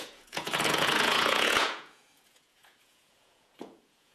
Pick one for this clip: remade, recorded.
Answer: remade